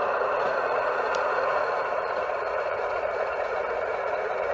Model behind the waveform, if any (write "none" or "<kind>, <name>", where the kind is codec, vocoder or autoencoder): vocoder, Vocos